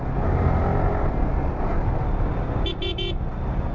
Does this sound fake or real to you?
real